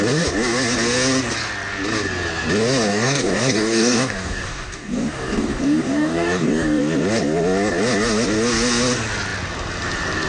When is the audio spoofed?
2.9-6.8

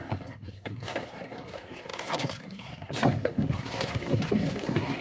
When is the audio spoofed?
0.0-5.0